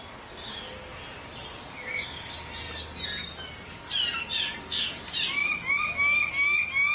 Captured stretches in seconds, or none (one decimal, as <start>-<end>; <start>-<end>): 0.0-6.9